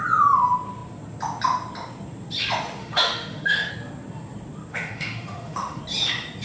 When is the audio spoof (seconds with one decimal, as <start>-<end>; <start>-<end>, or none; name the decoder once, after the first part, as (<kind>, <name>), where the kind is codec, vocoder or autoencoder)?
2.8-3.7 (autoencoder, DAC-VAE); 4.7-5.8

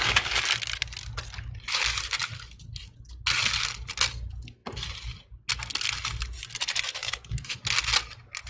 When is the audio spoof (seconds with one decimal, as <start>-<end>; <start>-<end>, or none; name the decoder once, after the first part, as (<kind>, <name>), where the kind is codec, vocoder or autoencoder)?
7.0-7.6 (autoencoder, DAC-VAE)

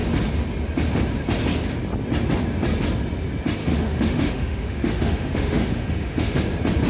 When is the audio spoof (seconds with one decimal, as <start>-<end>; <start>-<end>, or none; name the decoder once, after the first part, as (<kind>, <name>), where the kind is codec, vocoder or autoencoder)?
3.6-6.4 (autoencoder, DAC-VAE)

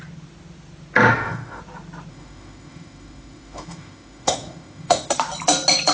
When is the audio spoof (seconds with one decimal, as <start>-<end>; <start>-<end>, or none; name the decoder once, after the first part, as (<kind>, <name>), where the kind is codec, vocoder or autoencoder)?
1.1-1.6 (autoencoder, DAC-VAE); 2.1-5.1

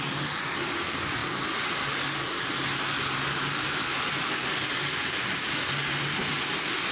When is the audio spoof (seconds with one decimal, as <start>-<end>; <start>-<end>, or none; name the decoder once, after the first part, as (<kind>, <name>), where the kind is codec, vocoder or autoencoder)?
none

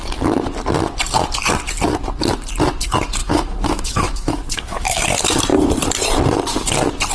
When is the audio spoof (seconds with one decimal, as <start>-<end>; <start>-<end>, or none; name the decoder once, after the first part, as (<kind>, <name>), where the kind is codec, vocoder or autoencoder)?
3.2-5.0 (autoencoder, DAC-VAE)